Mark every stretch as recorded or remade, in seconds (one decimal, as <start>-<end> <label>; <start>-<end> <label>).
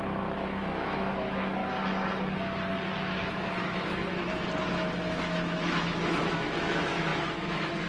0.0-1.6 remade; 1.6-3.3 recorded; 3.3-4.0 remade; 4.0-4.7 recorded; 4.7-7.9 remade